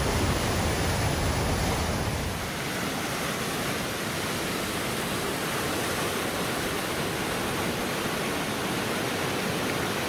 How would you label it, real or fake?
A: real